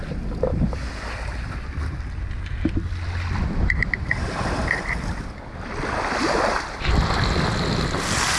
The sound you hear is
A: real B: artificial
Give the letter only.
A